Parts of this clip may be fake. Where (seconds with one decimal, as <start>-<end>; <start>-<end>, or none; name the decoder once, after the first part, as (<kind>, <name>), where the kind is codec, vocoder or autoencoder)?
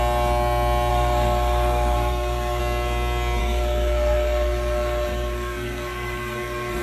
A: 0.9-2.6 (codec, SNAC); 3.4-6.8